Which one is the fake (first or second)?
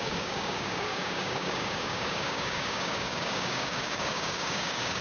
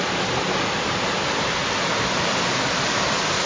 first